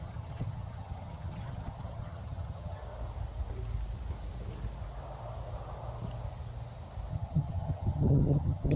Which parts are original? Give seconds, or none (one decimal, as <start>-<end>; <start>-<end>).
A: 2.8-7.1